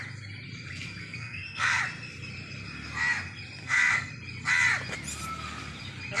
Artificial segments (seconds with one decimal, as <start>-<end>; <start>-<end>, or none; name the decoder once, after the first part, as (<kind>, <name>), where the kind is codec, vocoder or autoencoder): 1.0-1.8 (codec, SNAC); 3.6-4.1